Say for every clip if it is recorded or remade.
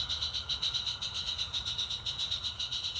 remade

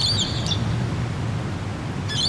recorded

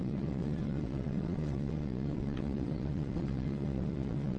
remade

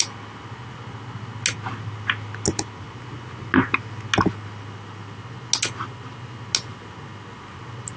recorded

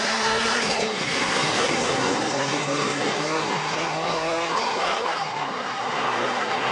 remade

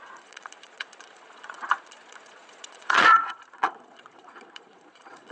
remade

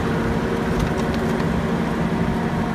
recorded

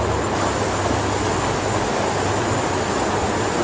recorded